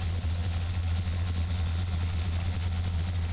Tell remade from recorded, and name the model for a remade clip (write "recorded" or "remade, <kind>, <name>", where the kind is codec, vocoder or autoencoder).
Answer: remade, vocoder, Vocos